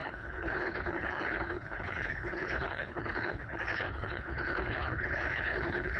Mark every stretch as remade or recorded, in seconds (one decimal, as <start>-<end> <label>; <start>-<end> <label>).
0.0-6.0 remade